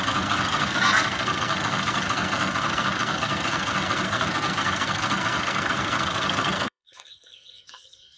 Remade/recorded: remade